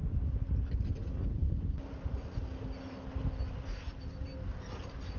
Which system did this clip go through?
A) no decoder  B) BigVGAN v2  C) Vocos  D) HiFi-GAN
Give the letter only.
A